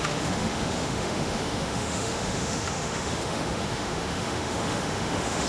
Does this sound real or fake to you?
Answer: fake